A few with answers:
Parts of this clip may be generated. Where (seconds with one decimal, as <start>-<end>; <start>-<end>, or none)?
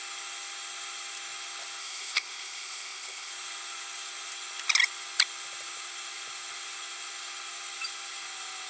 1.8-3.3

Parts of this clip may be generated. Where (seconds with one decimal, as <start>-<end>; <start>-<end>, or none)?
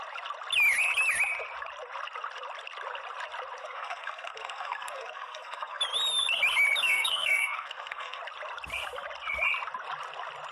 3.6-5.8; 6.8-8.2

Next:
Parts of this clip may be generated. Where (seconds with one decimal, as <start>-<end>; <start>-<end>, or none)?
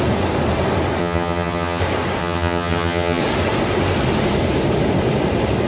1.0-1.8; 2.2-3.2